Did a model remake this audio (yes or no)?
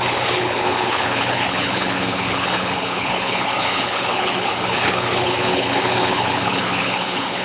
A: yes